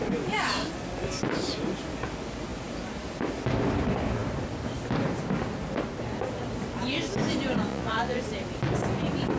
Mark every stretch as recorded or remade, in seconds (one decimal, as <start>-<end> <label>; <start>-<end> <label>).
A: 0.0-7.7 recorded; 7.7-8.2 remade; 8.2-9.4 recorded